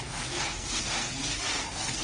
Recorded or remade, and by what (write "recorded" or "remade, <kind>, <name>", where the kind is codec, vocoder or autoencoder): remade, codec, SNAC